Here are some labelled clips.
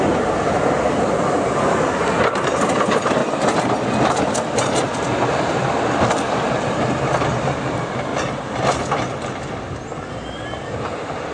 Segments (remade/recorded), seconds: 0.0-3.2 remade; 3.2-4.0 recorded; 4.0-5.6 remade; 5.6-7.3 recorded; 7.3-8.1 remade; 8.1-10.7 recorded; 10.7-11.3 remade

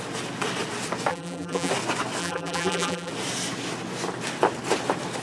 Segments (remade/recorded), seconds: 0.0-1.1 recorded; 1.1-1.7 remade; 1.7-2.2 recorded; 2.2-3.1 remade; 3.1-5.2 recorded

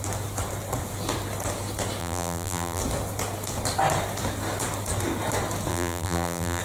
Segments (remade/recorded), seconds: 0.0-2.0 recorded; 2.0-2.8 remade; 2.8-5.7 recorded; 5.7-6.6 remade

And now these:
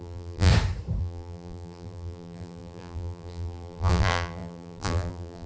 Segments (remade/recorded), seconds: 0.0-0.5 remade; 0.5-1.0 recorded; 1.0-5.5 remade